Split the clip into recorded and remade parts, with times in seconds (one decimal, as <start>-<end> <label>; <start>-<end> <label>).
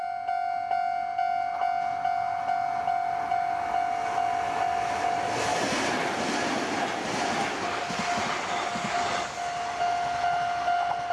0.0-5.5 recorded; 5.5-6.2 remade; 6.2-11.1 recorded